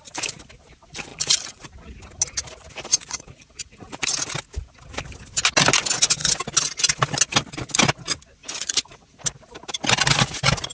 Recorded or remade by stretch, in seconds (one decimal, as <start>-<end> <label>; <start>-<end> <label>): 0.0-1.1 recorded; 1.1-1.7 remade; 1.7-2.9 recorded; 2.9-4.0 remade; 4.0-8.4 recorded; 8.4-9.2 remade; 9.2-10.7 recorded